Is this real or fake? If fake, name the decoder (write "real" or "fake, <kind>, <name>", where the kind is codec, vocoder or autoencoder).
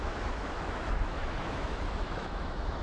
fake, autoencoder, DAC-VAE